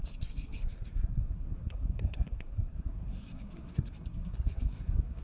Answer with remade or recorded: remade